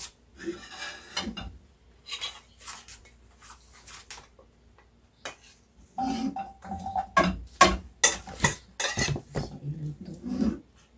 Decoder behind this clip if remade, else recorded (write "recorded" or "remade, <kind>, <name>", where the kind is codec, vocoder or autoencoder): recorded